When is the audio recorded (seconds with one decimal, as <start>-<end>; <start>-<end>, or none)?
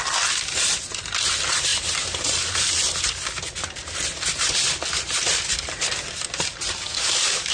0.0-1.7; 6.0-7.5